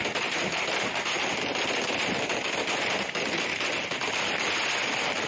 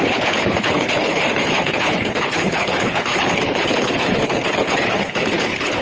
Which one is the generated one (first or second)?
second